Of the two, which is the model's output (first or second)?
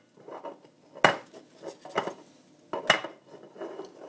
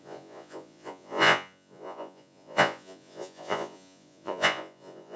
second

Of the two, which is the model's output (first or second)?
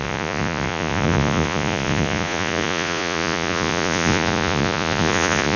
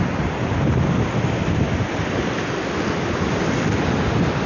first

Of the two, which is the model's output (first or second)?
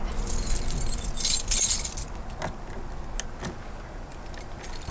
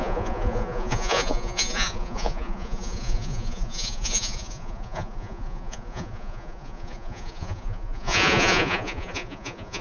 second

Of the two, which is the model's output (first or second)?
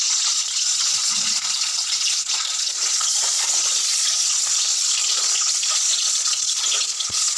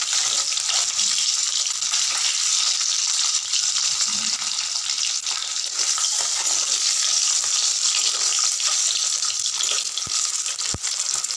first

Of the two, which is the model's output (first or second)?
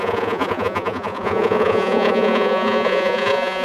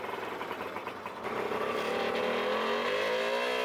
first